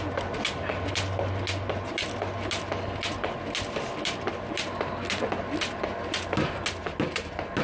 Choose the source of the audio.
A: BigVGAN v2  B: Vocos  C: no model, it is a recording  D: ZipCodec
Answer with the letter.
C